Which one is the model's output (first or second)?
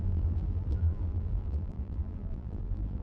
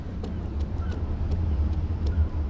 first